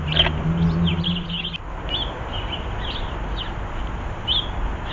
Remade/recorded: recorded